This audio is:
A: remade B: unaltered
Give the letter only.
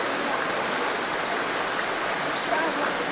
B